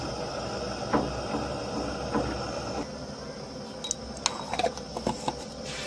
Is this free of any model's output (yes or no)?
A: yes